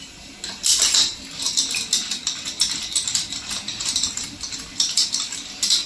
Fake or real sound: real